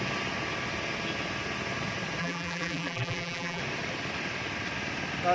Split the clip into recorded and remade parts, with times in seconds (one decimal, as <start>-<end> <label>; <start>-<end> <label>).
0.0-2.2 recorded; 2.2-3.6 remade; 3.6-5.3 recorded